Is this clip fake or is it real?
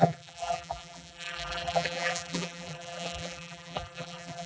fake